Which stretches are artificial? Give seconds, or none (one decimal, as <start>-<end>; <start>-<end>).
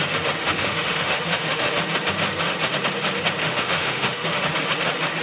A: 0.4-1.7; 3.4-4.4